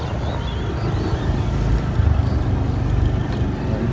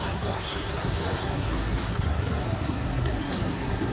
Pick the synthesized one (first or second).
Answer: second